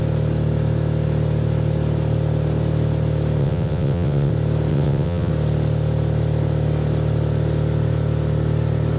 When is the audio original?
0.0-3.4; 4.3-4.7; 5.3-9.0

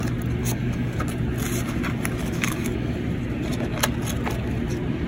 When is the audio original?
0.0-0.4; 1.0-2.2; 3.0-5.1

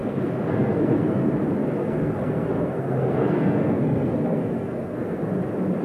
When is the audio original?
1.4-1.8; 5.3-5.8

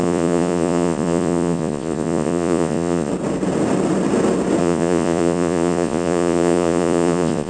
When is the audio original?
3.1-4.6

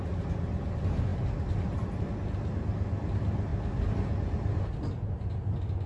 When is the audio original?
0.0-5.9

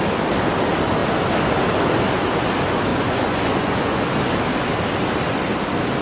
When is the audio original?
0.0-2.9; 4.0-6.0

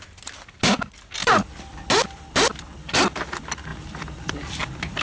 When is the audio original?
0.0-5.0